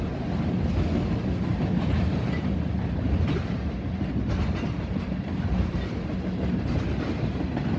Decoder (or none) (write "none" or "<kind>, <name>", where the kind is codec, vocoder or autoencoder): none